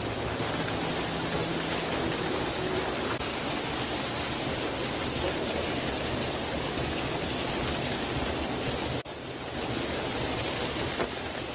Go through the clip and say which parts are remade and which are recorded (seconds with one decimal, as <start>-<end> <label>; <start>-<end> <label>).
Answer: 0.0-1.5 recorded; 1.5-2.7 remade; 2.7-6.2 recorded; 6.2-7.5 remade; 7.5-11.5 recorded